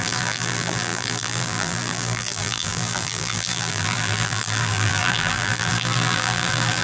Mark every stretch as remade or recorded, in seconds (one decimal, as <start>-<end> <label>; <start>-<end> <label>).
0.0-6.8 remade